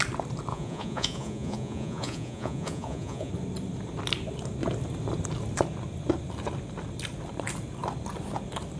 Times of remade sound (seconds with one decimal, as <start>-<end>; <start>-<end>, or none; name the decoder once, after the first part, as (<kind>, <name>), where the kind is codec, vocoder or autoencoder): 0.5-3.3 (vocoder, Vocos)